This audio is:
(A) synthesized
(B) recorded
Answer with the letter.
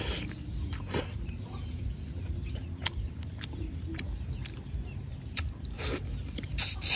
A